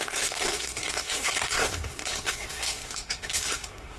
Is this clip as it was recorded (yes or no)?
no